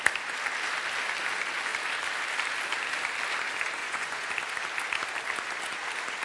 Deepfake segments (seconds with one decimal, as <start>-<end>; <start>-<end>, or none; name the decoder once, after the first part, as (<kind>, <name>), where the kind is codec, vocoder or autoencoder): 3.8-4.3 (vocoder, Vocos)